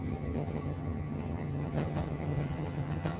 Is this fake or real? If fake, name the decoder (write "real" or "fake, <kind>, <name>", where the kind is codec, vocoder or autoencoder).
fake, vocoder, HiFi-GAN